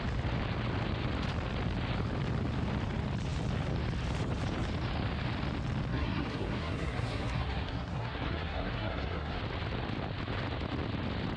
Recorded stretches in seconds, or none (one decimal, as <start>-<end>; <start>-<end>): 0.0-5.9; 9.4-11.4